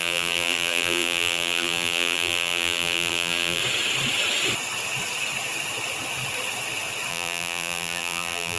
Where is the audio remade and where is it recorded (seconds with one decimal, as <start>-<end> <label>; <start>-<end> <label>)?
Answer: 0.0-3.6 remade; 3.6-7.1 recorded; 7.1-8.6 remade